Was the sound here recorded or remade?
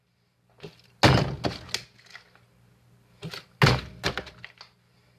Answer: recorded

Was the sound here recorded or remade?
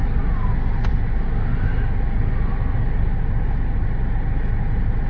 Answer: recorded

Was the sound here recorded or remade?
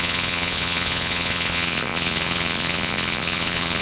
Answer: remade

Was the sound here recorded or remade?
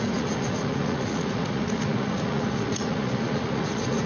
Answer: remade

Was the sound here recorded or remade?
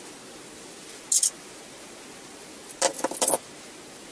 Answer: recorded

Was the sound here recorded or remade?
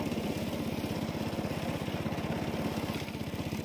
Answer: recorded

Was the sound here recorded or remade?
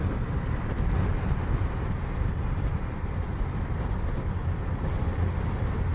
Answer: recorded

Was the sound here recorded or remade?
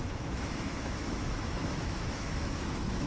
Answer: remade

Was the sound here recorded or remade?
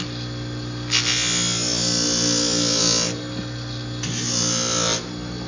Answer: recorded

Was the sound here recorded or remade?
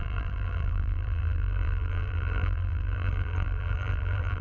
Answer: remade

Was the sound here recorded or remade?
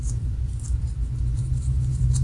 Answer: remade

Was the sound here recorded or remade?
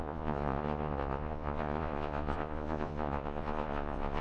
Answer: remade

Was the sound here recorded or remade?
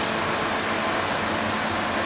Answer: recorded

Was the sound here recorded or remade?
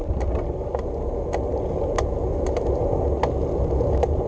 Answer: recorded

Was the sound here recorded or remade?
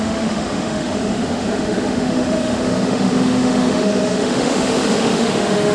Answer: remade